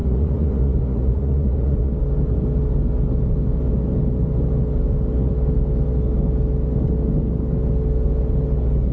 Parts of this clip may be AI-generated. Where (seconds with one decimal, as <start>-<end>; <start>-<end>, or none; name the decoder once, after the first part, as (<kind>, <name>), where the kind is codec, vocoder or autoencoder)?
0.0-1.9 (vocoder, Vocos)